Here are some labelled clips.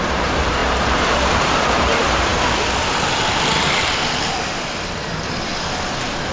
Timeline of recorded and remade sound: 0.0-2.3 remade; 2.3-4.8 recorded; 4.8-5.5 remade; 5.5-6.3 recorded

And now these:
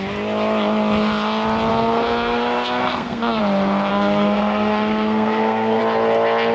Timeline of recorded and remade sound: 0.0-1.7 recorded; 1.7-3.4 remade; 3.4-3.9 recorded; 3.9-5.8 remade; 5.8-6.5 recorded

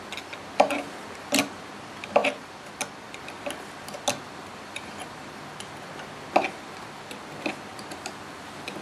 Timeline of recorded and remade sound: 0.0-4.5 recorded; 4.5-5.3 remade; 5.3-8.8 recorded

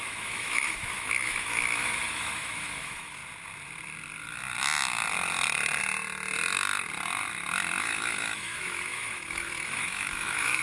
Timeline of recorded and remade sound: 0.0-3.2 remade; 3.2-7.8 recorded; 7.8-10.6 remade

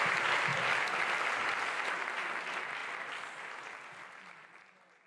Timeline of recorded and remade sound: 0.0-5.1 recorded